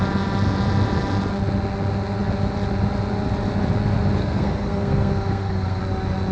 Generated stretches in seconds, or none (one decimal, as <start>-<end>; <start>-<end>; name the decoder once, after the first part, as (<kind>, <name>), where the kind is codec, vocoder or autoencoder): 4.2-5.8 (codec, SNAC)

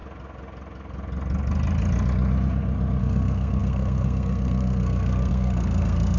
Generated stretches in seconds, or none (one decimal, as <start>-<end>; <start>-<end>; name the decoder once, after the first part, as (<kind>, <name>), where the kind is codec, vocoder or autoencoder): 3.0-6.2 (codec, SNAC)

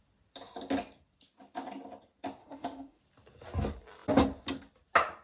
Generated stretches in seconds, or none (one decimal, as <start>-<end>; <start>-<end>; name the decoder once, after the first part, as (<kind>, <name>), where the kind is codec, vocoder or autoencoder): 2.4-3.0 (autoencoder, DAC-VAE)

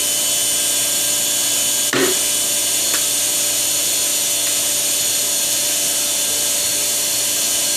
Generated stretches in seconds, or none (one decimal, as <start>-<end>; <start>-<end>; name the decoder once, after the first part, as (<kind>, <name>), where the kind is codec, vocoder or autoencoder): none

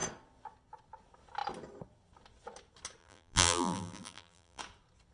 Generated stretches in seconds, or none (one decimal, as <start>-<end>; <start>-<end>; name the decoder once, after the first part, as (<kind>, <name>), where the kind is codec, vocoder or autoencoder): 3.0-4.6 (vocoder, BigVGAN v2)